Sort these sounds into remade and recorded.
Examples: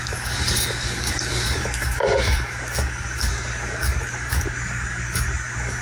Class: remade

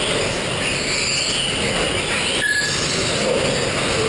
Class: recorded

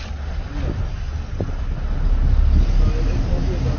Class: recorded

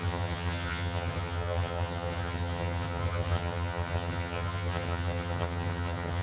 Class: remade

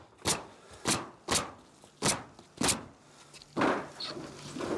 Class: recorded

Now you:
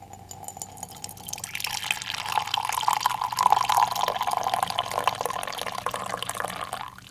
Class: recorded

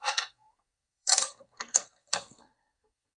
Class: remade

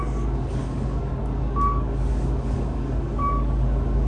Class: remade